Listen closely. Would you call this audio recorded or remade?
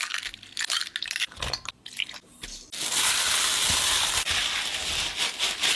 recorded